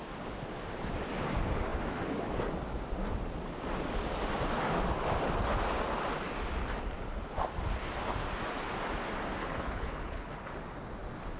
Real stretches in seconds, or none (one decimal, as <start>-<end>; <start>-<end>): 0.0-9.4; 10.3-11.4

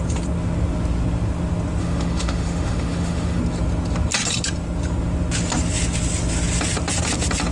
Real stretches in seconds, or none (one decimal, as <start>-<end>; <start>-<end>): 0.0-1.8; 3.4-7.5

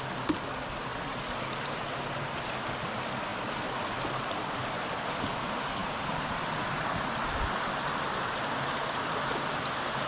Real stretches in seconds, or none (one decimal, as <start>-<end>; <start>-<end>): 0.0-0.9; 1.6-5.8; 7.1-10.1

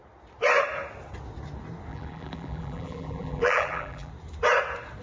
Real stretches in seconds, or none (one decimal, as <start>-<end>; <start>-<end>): 0.0-1.9; 4.1-5.0

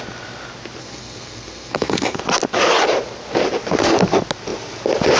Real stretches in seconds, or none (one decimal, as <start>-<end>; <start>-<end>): 0.0-0.8; 2.2-5.2

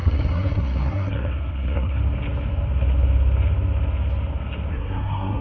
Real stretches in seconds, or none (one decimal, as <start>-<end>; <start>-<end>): 2.0-4.7

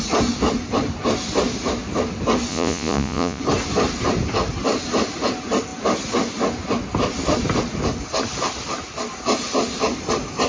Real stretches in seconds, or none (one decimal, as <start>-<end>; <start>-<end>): 0.0-2.5; 3.4-10.5

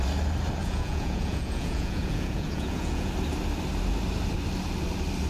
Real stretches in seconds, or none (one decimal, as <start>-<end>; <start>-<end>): 0.0-0.6; 3.1-5.3